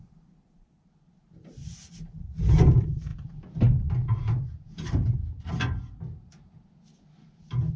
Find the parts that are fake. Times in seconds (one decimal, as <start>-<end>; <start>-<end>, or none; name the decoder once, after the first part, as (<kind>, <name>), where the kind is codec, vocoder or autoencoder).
none